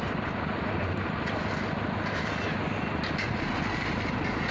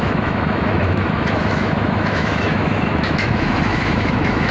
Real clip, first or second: first